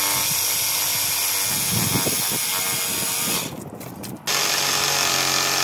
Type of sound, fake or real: real